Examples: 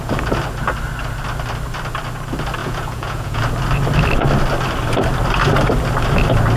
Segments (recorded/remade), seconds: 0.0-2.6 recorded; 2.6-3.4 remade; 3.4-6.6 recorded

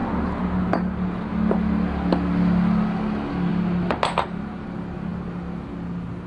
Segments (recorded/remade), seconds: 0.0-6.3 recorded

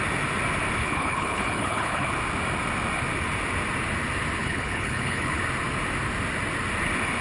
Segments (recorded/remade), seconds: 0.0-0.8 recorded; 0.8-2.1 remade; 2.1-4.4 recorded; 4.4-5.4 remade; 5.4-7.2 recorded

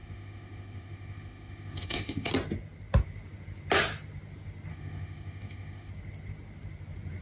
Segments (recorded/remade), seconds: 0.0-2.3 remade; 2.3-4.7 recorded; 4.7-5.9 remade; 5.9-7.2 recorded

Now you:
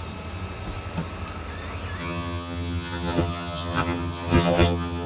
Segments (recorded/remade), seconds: 0.0-2.0 recorded; 2.0-5.1 remade

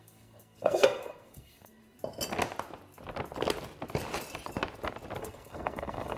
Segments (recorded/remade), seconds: 0.0-1.8 remade; 1.8-5.2 recorded; 5.2-6.2 remade

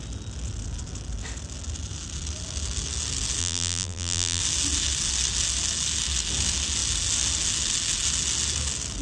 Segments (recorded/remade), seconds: 0.0-3.4 recorded; 3.4-4.4 remade; 4.4-9.0 recorded